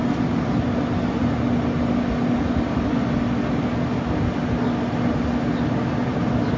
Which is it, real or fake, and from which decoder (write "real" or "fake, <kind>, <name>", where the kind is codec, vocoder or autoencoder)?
real